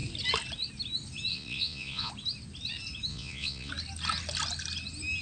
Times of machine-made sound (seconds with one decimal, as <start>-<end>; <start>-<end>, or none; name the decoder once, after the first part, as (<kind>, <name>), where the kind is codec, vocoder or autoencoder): 1.3-2.1 (vocoder, Vocos); 3.1-3.7